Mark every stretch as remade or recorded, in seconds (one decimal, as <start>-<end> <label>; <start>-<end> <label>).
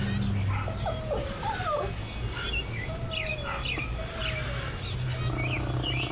0.0-6.1 recorded